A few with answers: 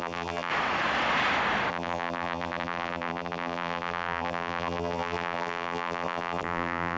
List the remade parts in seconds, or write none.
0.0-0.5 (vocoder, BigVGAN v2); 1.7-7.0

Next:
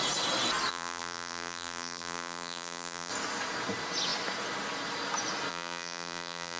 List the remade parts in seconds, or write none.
0.7-3.1 (vocoder, BigVGAN v2); 5.5-6.6

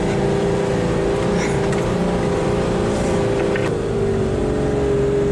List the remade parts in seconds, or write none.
none

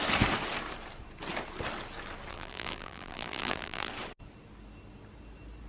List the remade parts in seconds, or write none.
2.3-3.9 (vocoder, BigVGAN v2)

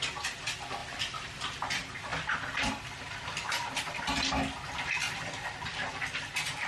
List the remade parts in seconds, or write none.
0.8-1.7 (vocoder, BigVGAN v2)

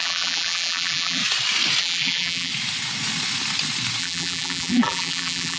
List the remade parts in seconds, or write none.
0.0-1.2 (vocoder, BigVGAN v2); 1.8-2.5; 4.0-5.6

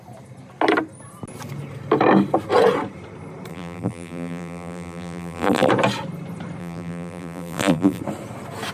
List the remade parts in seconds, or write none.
3.5-5.7 (vocoder, BigVGAN v2); 6.6-8.0

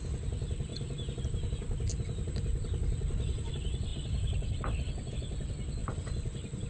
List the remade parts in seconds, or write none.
0.7-1.2 (vocoder, BigVGAN v2); 1.9-3.5; 5.8-6.7